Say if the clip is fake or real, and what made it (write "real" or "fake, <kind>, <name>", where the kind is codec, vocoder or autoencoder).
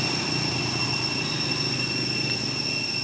real